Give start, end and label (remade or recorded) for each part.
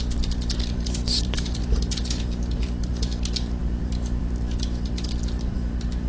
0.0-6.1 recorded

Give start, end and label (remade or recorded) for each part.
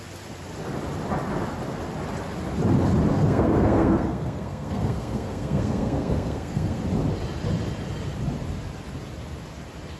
0.0-3.1 recorded; 3.1-6.8 remade; 6.8-10.0 recorded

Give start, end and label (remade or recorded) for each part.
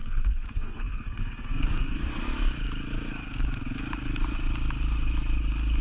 0.0-2.2 remade; 2.2-5.8 recorded